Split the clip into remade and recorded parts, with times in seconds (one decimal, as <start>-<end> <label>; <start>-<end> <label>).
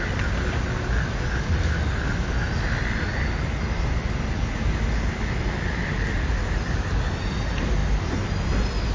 0.0-8.9 recorded